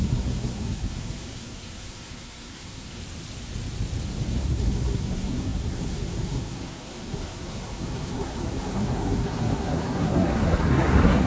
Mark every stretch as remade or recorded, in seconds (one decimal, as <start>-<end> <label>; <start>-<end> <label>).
0.0-3.0 remade; 3.0-4.4 recorded; 4.4-11.3 remade